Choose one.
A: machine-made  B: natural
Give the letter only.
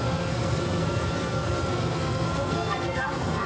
A